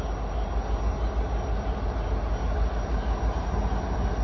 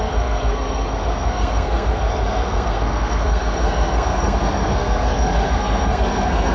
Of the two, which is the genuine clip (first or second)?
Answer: first